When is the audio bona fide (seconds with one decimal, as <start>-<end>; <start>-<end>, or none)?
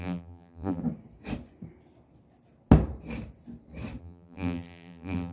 0.8-4.0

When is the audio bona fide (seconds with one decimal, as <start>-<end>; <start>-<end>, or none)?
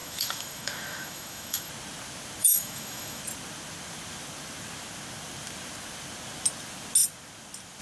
1.7-2.4; 3.2-7.8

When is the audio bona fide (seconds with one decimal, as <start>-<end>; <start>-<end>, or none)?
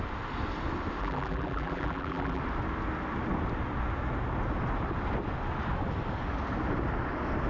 0.0-1.0; 2.4-7.5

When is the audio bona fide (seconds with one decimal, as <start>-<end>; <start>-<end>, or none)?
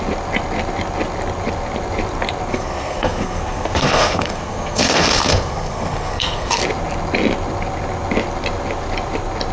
0.0-2.5; 6.6-9.5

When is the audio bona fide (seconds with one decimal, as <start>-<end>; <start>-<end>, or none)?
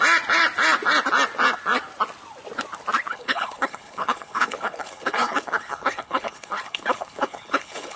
0.0-3.1